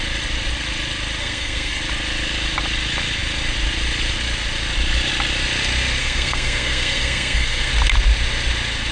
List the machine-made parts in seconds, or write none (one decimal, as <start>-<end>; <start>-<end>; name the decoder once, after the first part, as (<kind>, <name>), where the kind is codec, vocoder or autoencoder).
1.2-1.8 (codec, SNAC); 6.0-7.7